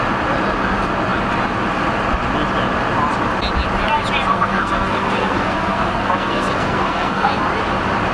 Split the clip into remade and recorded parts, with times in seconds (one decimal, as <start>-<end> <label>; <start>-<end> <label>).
0.0-4.3 recorded; 4.3-7.4 remade; 7.4-8.1 recorded